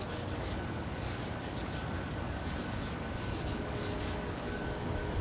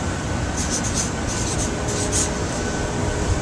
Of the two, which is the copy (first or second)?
first